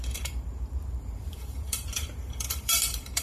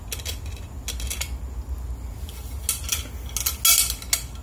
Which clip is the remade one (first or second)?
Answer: first